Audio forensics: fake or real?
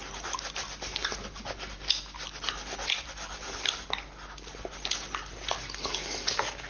real